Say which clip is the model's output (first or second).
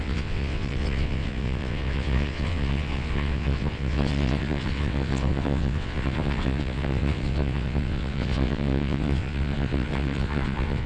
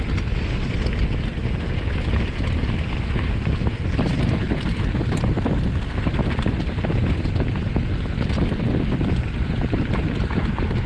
first